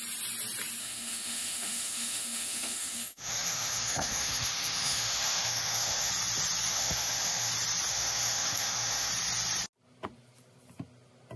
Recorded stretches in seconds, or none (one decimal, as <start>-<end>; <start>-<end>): 0.0-0.8; 6.1-6.7; 7.5-7.9; 9.1-11.4